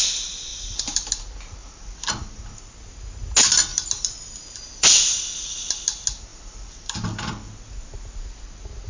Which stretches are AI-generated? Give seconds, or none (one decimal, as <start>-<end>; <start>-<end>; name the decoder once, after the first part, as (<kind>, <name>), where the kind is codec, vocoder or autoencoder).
0.5-1.1 (vocoder, BigVGAN v2); 3.7-5.3; 6.3-7.3